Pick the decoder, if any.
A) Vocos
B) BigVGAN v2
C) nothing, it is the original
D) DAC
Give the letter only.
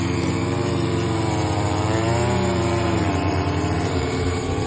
B